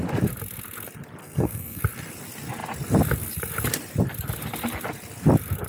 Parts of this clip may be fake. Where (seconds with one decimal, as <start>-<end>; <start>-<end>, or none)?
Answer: 1.2-1.8